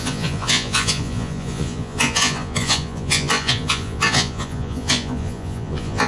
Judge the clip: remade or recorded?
remade